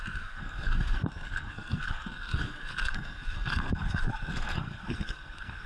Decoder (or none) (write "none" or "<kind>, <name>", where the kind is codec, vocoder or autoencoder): codec, SNAC